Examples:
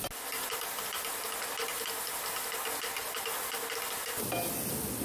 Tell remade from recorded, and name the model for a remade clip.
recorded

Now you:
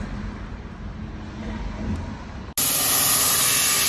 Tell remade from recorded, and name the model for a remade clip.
recorded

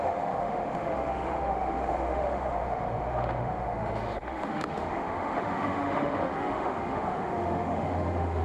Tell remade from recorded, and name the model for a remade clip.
remade, autoencoder, DAC-VAE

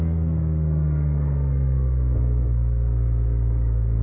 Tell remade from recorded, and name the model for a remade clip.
remade, codec, SNAC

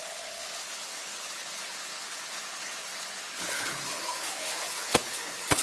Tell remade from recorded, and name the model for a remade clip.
remade, codec, HILCodec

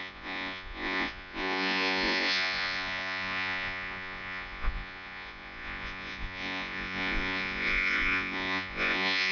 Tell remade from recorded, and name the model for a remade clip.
remade, vocoder, Vocos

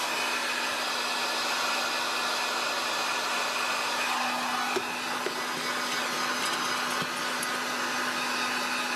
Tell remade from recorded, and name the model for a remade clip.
recorded